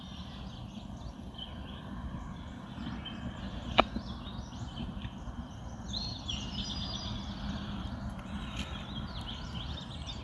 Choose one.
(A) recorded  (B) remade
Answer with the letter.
A